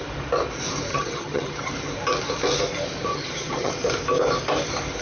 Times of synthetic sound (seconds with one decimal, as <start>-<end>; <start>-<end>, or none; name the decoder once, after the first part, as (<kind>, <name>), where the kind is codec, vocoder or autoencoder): 0.9-1.7 (vocoder, HiFi-GAN); 3.1-3.7